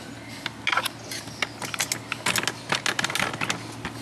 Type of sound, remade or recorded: recorded